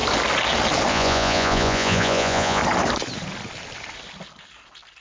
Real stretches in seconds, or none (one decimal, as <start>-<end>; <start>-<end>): 0.0-0.9; 2.6-5.0